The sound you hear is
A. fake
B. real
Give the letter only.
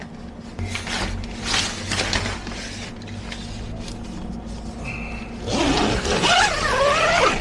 B